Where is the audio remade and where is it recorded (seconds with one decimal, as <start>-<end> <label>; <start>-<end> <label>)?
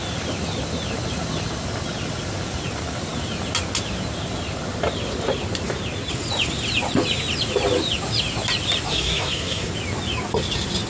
0.0-8.9 recorded; 8.9-9.7 remade; 9.7-10.9 recorded